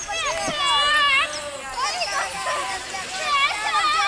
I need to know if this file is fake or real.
real